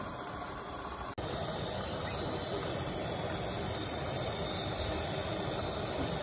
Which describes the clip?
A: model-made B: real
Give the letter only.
B